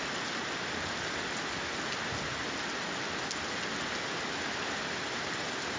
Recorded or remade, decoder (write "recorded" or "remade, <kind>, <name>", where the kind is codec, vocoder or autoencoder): recorded